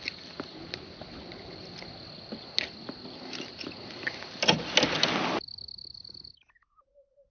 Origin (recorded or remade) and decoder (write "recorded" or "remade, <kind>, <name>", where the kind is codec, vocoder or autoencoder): recorded